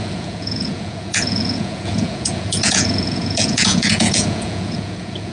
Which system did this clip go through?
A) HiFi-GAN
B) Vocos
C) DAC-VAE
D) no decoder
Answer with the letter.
B